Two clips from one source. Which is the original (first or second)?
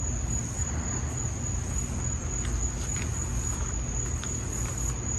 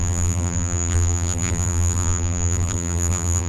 first